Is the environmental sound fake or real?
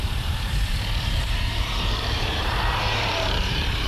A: fake